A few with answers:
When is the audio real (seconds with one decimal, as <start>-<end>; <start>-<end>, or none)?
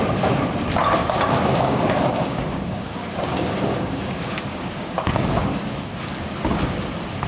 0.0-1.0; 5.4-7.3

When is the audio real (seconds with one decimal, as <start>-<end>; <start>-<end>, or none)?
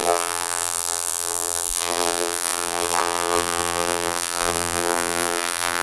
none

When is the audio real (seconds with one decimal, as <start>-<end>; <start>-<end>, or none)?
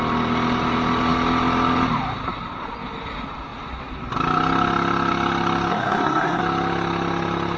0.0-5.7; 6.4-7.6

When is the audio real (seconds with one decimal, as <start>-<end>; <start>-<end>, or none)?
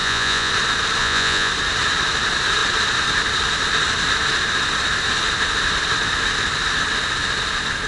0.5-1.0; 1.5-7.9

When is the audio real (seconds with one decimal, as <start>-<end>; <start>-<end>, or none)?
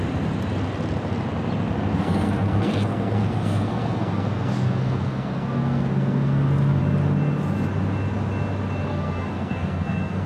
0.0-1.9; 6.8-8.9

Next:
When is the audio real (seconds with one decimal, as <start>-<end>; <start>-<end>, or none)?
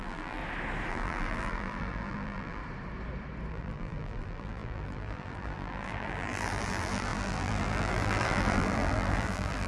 0.4-0.9; 2.6-3.5